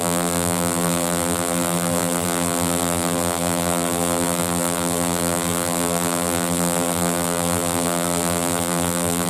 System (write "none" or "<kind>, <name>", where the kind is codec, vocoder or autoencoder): vocoder, BigVGAN v2